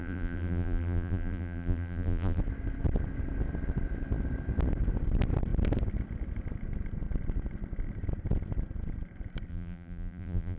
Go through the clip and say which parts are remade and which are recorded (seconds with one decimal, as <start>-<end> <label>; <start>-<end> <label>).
0.0-2.4 remade; 2.4-9.5 recorded; 9.5-10.6 remade